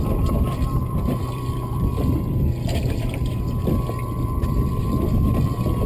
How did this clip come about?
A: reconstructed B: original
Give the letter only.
A